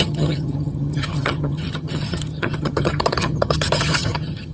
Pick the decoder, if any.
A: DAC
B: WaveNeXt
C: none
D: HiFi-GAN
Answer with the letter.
D